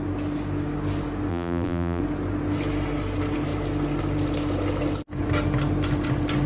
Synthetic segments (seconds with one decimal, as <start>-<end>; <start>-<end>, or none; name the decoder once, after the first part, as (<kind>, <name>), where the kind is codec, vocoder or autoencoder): 1.3-2.0 (vocoder, BigVGAN v2)